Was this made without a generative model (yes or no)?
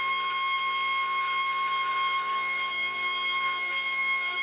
no